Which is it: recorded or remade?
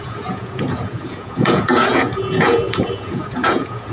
remade